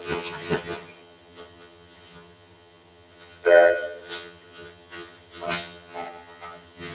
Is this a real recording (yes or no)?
no